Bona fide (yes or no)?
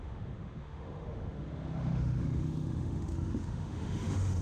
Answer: no